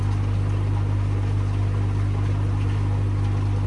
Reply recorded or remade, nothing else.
recorded